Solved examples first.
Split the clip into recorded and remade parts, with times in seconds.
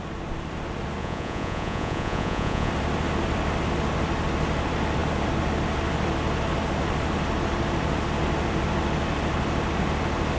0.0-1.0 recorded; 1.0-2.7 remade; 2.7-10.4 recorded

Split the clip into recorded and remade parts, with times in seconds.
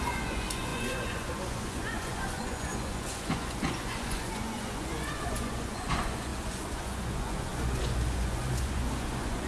0.0-9.5 remade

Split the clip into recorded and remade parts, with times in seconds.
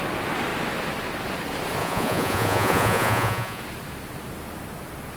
0.0-1.8 recorded; 1.8-3.6 remade; 3.6-5.2 recorded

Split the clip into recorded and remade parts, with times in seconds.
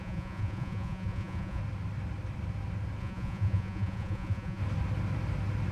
0.0-1.6 remade; 1.6-3.0 recorded; 3.0-4.6 remade; 4.6-5.7 recorded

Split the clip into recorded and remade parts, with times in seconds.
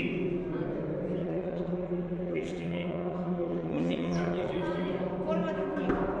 0.0-1.2 recorded; 1.2-4.9 remade; 4.9-6.2 recorded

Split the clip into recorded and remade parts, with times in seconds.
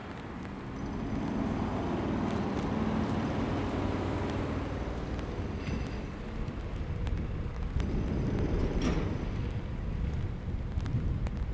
0.0-11.5 recorded